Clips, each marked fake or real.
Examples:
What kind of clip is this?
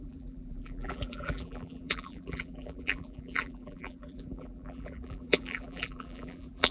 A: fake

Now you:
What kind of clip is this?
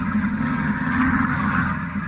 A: fake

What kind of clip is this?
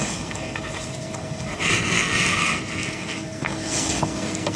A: fake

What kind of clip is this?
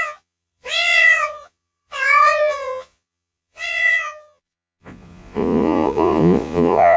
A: fake